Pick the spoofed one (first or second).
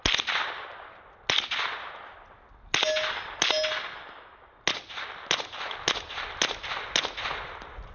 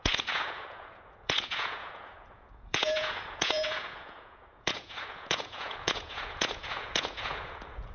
second